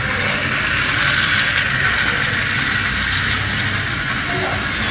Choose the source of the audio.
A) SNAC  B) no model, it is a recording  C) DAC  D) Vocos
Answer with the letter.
B